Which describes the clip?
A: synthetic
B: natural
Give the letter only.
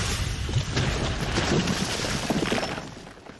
B